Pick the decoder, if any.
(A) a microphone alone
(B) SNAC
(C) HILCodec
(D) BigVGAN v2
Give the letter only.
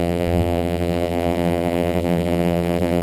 D